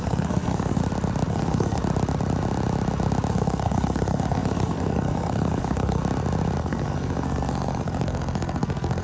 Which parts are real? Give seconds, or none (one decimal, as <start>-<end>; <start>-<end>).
0.8-1.3; 1.8-3.3; 6.0-6.6